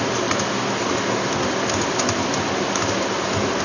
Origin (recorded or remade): recorded